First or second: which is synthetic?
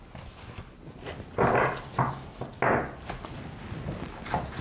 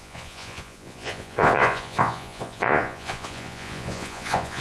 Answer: second